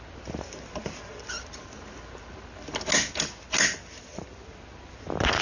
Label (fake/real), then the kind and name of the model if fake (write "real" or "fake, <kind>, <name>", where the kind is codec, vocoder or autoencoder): real